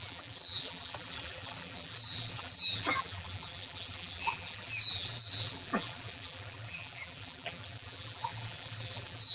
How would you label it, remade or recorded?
remade